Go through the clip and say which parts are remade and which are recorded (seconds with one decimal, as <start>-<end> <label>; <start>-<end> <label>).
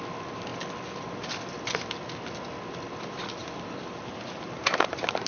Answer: 0.0-3.4 recorded; 3.4-3.9 remade; 3.9-4.6 recorded; 4.6-5.3 remade